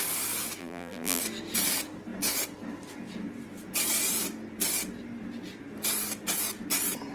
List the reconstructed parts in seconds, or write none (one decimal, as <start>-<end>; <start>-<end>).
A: 0.6-1.2